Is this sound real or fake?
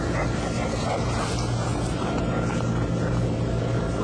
real